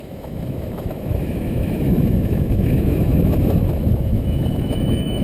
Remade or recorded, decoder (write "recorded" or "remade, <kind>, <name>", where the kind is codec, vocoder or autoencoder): remade, autoencoder, DAC-VAE